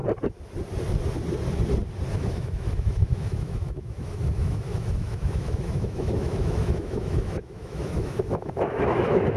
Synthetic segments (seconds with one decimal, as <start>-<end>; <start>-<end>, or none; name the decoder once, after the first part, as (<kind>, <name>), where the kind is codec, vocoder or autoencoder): 2.1-9.4 (autoencoder, DAC-VAE)